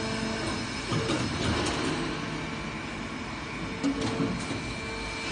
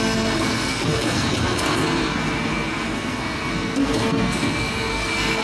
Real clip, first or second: first